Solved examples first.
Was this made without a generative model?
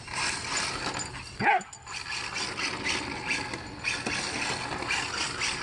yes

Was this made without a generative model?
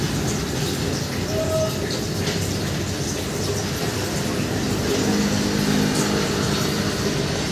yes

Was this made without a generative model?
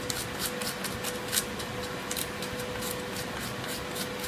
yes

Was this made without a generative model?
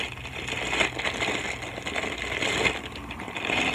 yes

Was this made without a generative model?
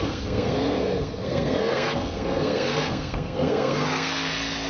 no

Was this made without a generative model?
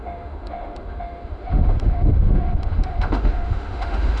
no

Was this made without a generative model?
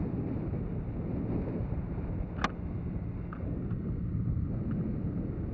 yes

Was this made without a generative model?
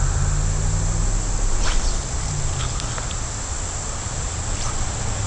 yes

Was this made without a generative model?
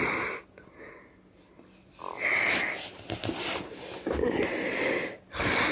yes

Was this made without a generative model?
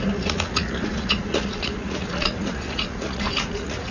no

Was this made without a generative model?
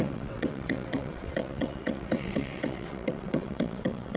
no